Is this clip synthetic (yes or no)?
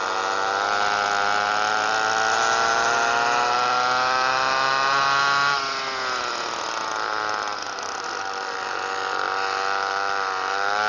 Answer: no